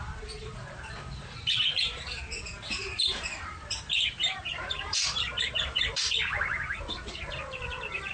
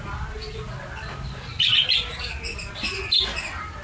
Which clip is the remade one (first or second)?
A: first